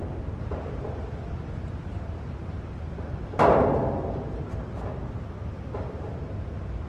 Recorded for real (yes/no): yes